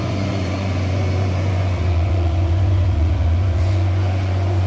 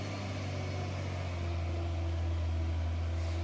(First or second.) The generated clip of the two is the first